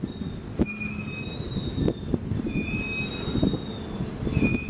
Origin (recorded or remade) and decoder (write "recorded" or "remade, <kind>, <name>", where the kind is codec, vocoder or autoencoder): recorded